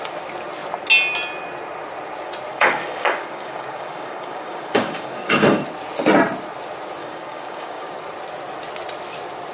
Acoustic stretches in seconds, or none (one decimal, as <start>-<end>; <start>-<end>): 0.0-2.5; 5.6-7.0; 8.0-9.5